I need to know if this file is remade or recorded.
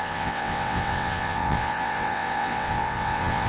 remade